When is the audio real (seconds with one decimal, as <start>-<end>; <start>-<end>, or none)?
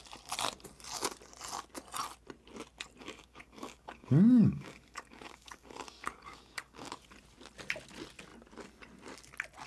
0.0-3.0; 7.0-9.7